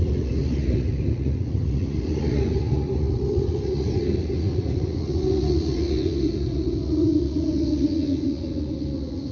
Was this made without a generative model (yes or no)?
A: no